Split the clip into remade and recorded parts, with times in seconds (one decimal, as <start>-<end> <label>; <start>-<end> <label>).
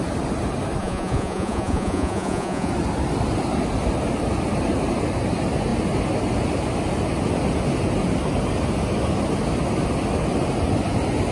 0.0-0.8 recorded; 0.8-2.7 remade; 2.7-11.3 recorded